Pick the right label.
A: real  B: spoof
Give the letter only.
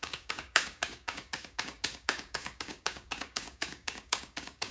B